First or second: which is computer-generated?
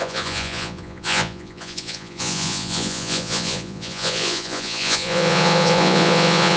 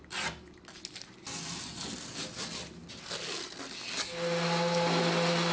first